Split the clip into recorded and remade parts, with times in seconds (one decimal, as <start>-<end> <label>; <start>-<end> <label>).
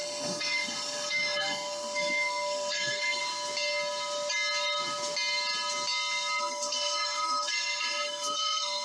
0.0-3.2 remade; 3.2-6.4 recorded; 6.4-8.8 remade